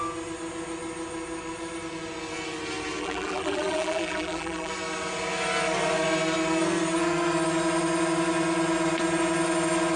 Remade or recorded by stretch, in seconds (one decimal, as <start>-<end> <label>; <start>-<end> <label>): 0.0-3.0 recorded; 3.0-4.7 remade; 4.7-10.0 recorded